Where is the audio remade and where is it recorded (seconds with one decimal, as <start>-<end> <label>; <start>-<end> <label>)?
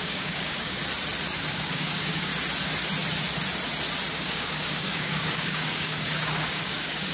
0.0-0.8 remade; 0.8-1.5 recorded; 1.5-2.3 remade; 2.3-4.1 recorded; 4.1-7.1 remade